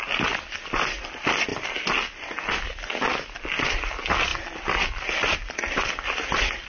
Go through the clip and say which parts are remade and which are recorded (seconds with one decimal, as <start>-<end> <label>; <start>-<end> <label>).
0.0-6.7 recorded